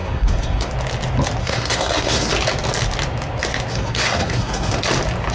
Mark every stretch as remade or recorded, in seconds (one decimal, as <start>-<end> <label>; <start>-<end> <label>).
0.0-0.7 remade; 0.7-1.4 recorded; 1.4-2.3 remade; 2.3-3.7 recorded; 3.7-4.8 remade; 4.8-5.3 recorded